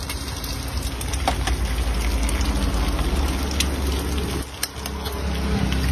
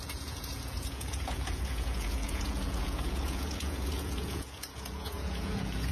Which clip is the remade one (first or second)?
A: second